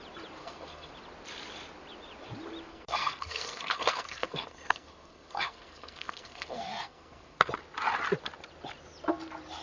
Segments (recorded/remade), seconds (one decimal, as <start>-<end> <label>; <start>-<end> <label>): 0.0-0.4 recorded; 0.4-0.9 remade; 0.9-2.7 recorded; 2.7-7.5 remade; 7.5-9.6 recorded